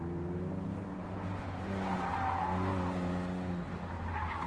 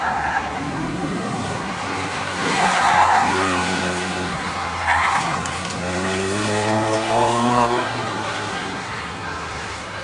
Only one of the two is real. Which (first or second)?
first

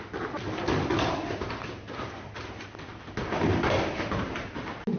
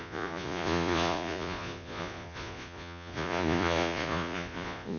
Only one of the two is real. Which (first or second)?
first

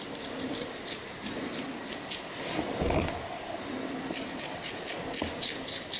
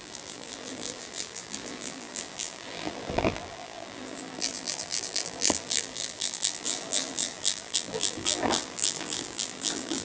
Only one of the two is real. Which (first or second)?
first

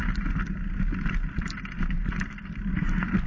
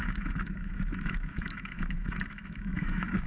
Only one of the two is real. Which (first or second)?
first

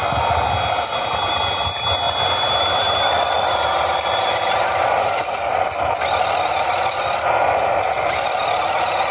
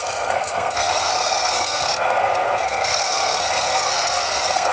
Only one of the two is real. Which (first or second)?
first